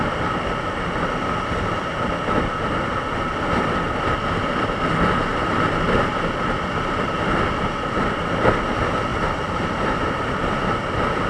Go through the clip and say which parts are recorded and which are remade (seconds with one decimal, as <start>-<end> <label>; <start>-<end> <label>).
0.0-5.3 recorded; 5.3-6.0 remade; 6.0-9.1 recorded; 9.1-10.8 remade; 10.8-11.3 recorded